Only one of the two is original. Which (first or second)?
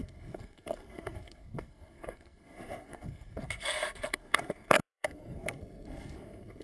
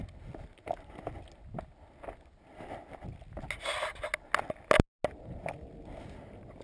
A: second